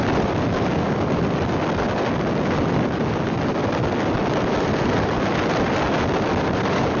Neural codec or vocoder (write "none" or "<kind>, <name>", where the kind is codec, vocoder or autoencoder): none